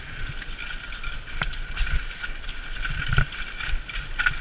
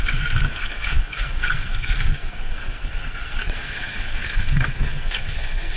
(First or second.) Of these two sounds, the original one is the first